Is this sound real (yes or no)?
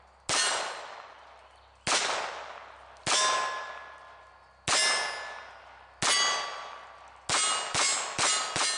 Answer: yes